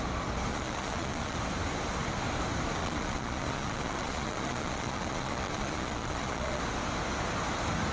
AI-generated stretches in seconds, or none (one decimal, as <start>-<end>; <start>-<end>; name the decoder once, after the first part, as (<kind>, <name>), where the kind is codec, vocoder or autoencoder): 0.5-1.4 (vocoder, Vocos); 2.8-6.6